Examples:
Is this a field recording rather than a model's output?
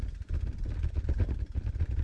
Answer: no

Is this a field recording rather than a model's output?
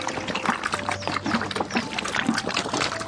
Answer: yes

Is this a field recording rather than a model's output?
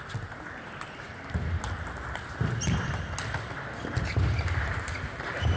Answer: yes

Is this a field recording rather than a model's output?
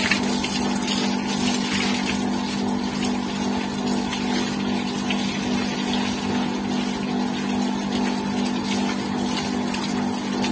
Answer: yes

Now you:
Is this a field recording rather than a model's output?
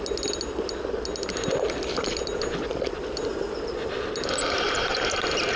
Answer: yes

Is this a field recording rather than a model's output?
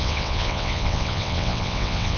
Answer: no